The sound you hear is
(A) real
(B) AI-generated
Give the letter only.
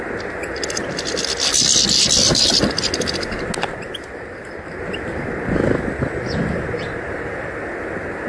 A